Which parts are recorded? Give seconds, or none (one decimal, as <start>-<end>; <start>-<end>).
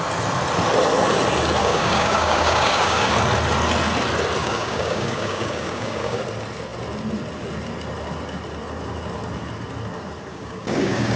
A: 0.0-1.6; 3.1-4.4; 6.2-10.3